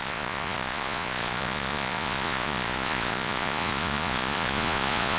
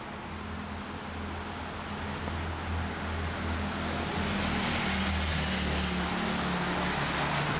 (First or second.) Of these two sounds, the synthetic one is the first